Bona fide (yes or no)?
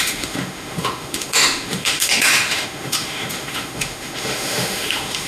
no